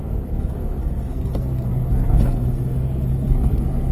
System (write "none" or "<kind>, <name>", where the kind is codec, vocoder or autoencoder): codec, SNAC